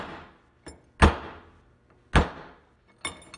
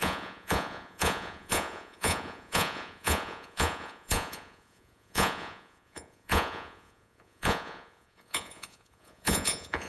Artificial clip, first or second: second